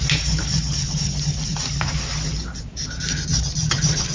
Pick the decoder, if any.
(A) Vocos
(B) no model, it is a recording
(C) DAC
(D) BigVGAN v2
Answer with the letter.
B